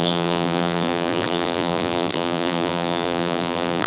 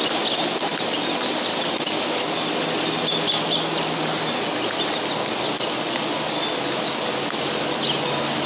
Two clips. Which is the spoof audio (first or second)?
first